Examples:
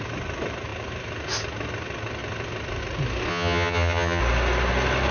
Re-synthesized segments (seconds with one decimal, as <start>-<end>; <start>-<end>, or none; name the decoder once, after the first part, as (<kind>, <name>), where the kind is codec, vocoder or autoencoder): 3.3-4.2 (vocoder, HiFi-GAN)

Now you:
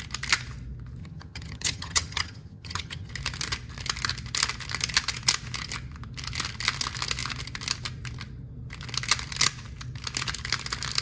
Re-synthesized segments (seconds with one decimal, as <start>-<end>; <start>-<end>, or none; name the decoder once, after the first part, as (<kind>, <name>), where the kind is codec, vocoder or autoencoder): 1.0-3.1 (vocoder, HiFi-GAN)

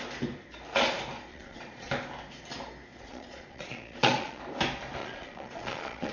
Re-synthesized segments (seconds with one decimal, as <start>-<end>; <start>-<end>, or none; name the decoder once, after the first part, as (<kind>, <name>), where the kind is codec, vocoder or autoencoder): 1.3-1.9 (vocoder, Vocos); 2.9-4.4; 5.0-6.1

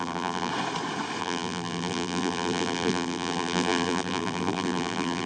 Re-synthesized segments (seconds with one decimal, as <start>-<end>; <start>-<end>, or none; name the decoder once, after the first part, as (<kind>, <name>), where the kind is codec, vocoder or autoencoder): 0.0-0.5 (vocoder, BigVGAN v2); 1.2-5.3

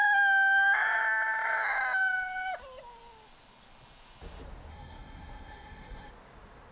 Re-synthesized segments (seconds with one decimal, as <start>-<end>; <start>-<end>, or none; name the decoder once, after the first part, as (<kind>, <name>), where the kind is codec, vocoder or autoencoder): 4.7-6.1 (codec, SNAC)

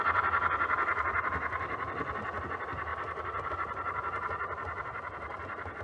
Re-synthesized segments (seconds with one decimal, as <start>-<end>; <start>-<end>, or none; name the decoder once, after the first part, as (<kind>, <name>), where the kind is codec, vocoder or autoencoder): none

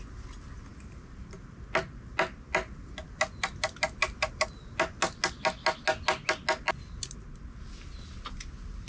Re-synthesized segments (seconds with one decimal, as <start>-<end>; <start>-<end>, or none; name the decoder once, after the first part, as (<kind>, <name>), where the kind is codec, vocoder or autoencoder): 0.7-1.6 (vocoder, BigVGAN v2)